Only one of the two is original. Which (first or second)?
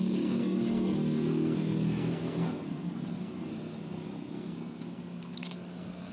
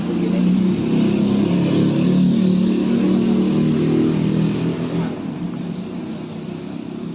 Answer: second